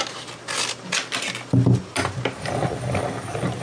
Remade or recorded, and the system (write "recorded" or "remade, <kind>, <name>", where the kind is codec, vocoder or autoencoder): recorded